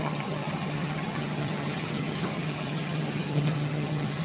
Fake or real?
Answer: fake